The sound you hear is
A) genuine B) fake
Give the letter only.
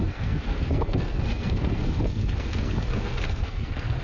B